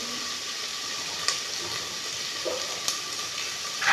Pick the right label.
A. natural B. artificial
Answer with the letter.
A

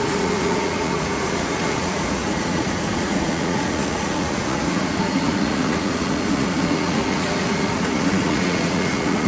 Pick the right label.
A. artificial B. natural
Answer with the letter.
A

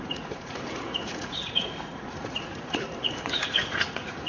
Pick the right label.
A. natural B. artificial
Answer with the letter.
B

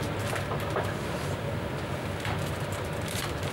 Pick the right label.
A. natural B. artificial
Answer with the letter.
A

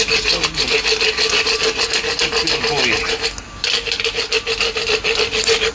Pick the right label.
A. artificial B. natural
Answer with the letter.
B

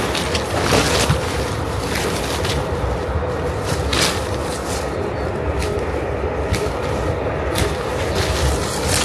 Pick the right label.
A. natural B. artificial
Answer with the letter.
A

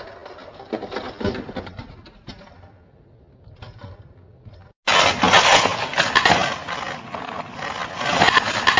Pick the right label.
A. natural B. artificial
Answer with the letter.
A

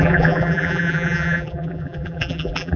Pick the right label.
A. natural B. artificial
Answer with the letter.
B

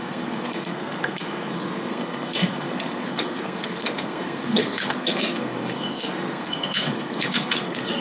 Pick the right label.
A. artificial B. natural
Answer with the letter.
A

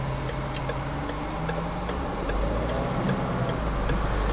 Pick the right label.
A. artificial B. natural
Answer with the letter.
B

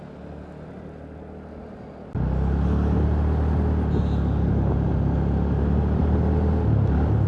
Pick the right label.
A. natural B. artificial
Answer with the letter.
A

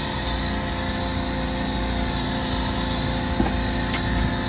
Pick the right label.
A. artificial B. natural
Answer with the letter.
B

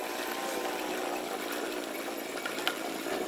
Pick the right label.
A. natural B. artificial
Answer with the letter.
A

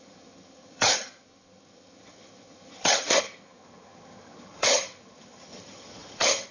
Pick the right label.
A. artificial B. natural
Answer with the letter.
A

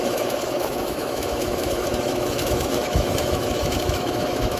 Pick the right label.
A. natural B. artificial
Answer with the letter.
B